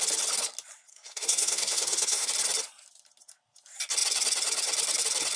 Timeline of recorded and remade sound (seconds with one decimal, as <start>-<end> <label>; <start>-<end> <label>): 0.0-0.9 recorded; 0.9-2.3 remade; 2.3-5.4 recorded